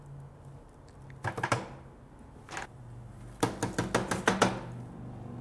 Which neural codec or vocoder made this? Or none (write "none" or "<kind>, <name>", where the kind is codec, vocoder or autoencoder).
none